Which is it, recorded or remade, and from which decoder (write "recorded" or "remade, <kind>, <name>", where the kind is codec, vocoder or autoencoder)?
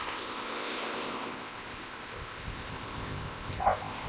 remade, codec, ZipCodec